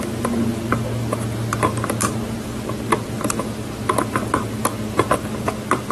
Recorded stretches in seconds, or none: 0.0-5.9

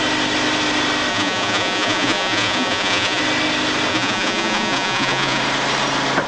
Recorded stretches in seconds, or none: 0.0-1.1; 3.2-3.9; 5.4-6.3

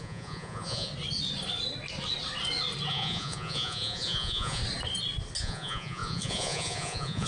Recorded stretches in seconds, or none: 0.9-2.9; 4.6-5.4